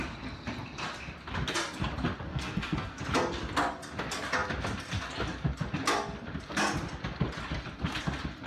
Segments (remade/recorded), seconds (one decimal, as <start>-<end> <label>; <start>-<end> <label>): 0.0-2.3 recorded; 2.3-3.0 remade; 3.0-8.5 recorded